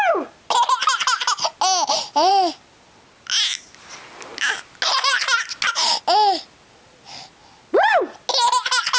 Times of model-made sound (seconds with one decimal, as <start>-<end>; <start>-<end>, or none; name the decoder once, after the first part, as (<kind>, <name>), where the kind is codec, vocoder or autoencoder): none